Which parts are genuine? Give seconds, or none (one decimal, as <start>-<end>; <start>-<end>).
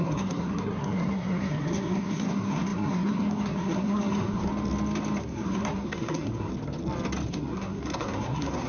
4.5-5.2; 6.5-7.3